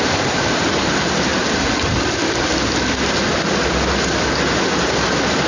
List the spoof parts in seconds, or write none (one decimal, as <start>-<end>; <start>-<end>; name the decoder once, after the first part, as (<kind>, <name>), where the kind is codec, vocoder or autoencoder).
0.0-1.3 (vocoder, BigVGAN v2); 4.6-5.5